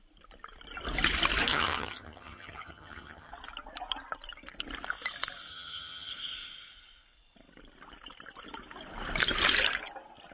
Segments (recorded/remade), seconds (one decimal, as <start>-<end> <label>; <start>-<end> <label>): 0.0-1.5 recorded; 1.5-3.3 remade; 3.3-5.5 recorded; 5.5-6.1 remade; 6.1-10.3 recorded